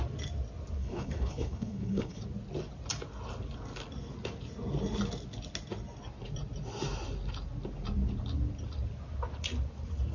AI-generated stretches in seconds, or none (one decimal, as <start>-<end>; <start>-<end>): 0.8-2.2